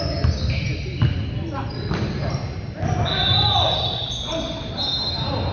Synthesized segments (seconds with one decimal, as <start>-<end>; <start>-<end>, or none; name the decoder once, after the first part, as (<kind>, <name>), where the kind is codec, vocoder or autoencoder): none